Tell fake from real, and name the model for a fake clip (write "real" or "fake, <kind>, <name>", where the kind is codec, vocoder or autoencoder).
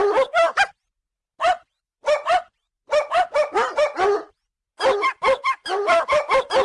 real